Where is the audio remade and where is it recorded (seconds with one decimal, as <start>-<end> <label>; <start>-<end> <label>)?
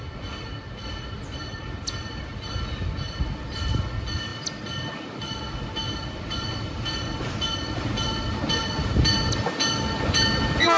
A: 0.0-10.8 recorded